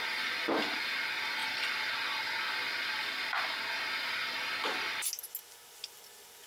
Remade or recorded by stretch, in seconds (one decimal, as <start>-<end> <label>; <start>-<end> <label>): 0.0-6.5 recorded